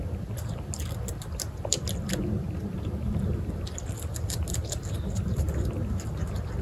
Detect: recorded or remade recorded